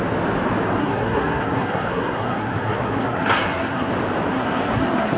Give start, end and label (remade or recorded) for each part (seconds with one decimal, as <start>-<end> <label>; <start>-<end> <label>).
0.0-0.8 recorded; 0.8-3.9 remade; 3.9-4.3 recorded; 4.3-5.2 remade